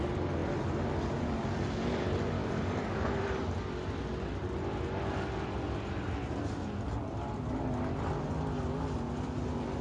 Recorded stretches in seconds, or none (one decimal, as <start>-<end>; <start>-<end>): 0.0-2.4; 3.4-9.8